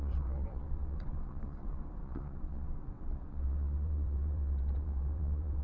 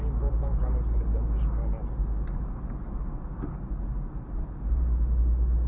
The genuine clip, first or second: second